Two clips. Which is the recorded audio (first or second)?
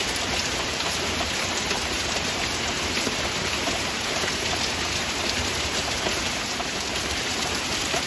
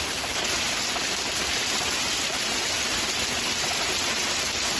second